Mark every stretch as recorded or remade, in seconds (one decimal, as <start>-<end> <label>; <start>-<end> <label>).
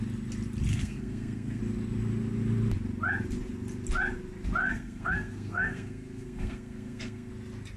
0.0-0.7 recorded; 0.7-1.6 remade; 1.6-4.6 recorded; 4.6-7.3 remade; 7.3-7.8 recorded